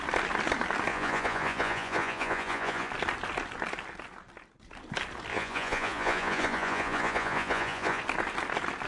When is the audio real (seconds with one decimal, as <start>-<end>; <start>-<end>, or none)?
0.0-0.9; 2.9-5.3; 8.0-8.9